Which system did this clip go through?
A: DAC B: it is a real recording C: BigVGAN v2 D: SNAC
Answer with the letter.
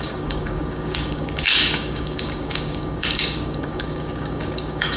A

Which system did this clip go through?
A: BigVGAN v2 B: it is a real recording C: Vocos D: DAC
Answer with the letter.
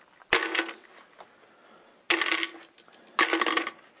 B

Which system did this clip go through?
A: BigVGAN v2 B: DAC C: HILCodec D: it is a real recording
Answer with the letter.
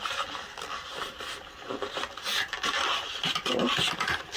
D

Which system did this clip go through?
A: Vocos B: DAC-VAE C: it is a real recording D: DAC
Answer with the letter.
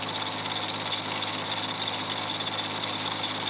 C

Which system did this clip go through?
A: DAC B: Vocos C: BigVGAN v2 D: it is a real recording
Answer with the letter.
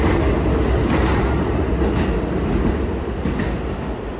D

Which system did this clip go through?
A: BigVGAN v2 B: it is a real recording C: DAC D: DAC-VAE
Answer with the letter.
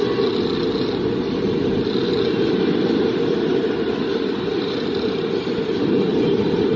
B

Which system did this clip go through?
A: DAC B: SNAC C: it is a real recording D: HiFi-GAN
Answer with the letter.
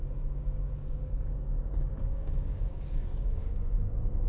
A